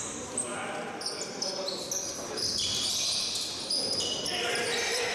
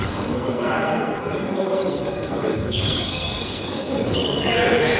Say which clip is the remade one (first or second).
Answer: second